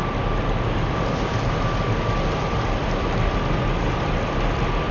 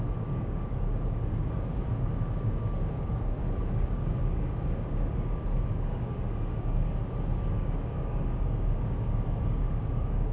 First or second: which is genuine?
first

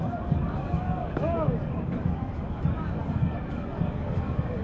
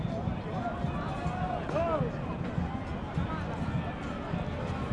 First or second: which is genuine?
second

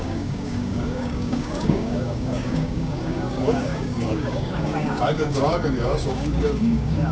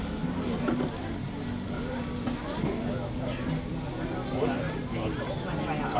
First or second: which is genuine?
second